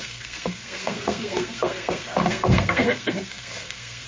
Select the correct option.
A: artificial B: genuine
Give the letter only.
A